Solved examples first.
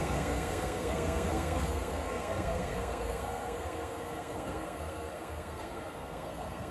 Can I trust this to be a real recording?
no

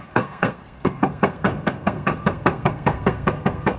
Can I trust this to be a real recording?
no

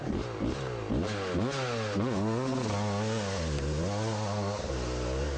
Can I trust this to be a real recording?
yes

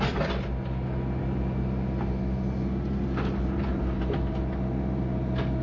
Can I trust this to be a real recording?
yes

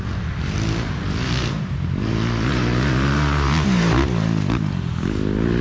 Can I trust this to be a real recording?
yes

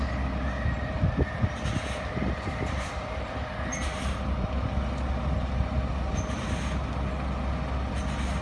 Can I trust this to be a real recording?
yes